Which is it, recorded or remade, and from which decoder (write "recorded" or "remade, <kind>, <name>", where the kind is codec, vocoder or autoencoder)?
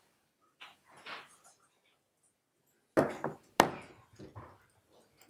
recorded